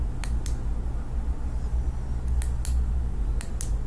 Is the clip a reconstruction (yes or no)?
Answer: no